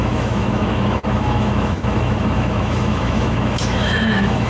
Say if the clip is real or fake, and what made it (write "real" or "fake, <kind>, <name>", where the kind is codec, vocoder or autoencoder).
fake, autoencoder, DAC-VAE